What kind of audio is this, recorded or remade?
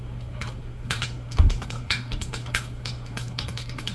remade